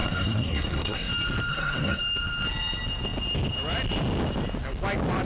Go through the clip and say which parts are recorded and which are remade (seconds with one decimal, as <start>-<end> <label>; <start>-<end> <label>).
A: 0.0-1.1 remade; 1.1-1.5 recorded; 1.5-2.0 remade; 2.0-5.2 recorded